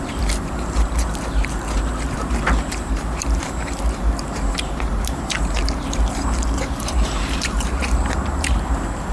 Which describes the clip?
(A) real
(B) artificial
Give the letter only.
B